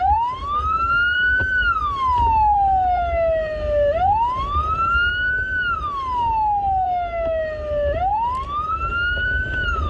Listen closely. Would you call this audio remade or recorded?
recorded